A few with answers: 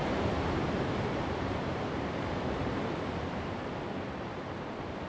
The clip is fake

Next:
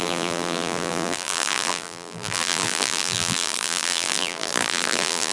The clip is fake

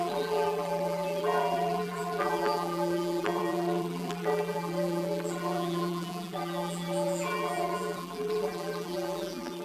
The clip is fake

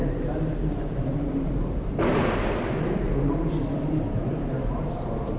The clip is fake